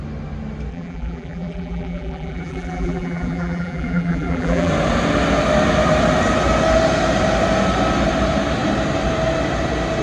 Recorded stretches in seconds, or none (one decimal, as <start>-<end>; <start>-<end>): 0.0-0.7; 4.7-10.0